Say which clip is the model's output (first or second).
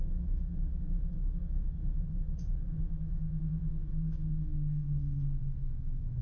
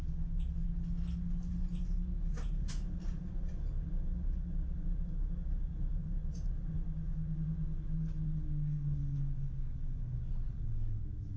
first